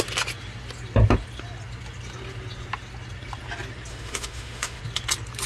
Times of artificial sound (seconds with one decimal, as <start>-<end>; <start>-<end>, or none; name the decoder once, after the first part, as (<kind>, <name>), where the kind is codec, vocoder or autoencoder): 3.9-4.8 (autoencoder, DAC-VAE)

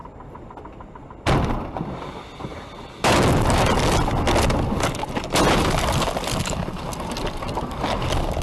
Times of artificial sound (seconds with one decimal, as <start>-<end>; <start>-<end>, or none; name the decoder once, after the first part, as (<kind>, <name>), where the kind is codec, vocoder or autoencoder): 0.0-2.1 (vocoder, BigVGAN v2); 2.5-4.1